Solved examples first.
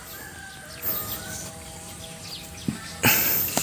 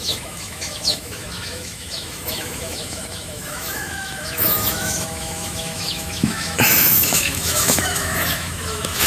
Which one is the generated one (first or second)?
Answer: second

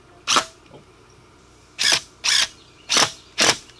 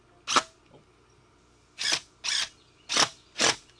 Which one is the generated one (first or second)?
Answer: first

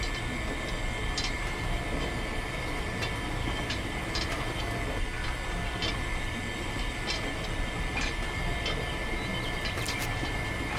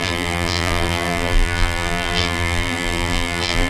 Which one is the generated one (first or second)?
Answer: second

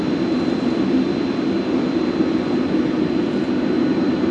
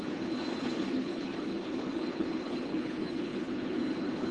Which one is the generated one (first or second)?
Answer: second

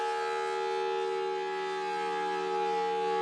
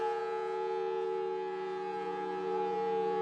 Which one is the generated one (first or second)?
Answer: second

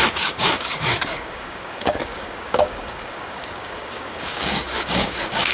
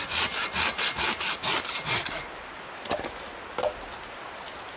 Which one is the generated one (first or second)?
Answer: first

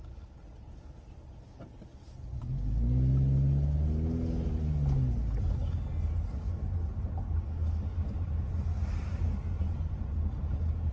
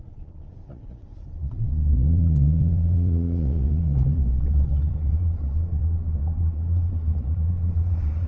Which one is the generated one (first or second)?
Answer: second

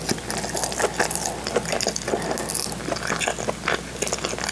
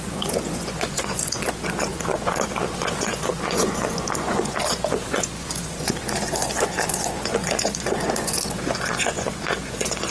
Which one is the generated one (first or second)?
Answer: second